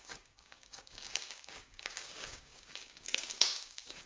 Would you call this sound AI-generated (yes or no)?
yes